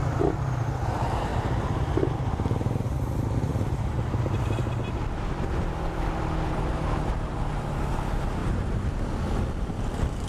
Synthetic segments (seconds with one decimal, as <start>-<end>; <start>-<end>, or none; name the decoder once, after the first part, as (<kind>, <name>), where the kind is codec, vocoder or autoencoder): 3.5-4.1 (vocoder, BigVGAN v2)